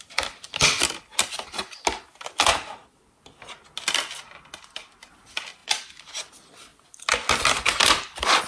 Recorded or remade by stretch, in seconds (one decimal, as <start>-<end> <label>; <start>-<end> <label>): 0.0-8.5 recorded